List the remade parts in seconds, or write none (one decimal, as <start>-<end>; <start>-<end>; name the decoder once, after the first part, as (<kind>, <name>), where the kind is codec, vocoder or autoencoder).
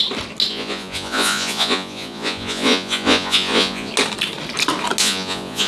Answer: 0.5-3.9 (vocoder, Vocos); 5.0-5.7